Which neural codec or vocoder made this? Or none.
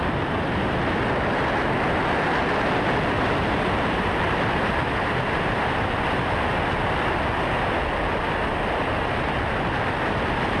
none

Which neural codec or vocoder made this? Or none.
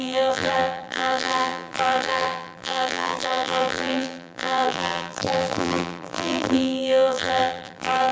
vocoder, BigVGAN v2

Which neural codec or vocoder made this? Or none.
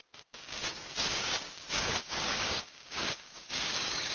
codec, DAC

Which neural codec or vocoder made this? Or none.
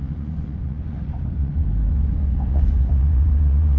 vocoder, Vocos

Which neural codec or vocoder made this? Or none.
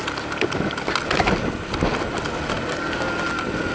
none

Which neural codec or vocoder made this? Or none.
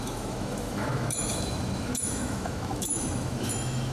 autoencoder, DAC-VAE